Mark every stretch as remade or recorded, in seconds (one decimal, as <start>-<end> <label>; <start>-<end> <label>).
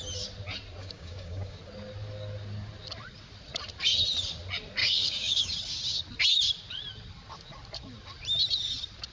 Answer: 0.0-0.8 recorded; 0.8-1.6 remade; 1.6-4.8 recorded; 4.8-5.5 remade; 5.5-9.1 recorded